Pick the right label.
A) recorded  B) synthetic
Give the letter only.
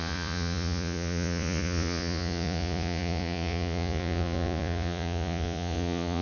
B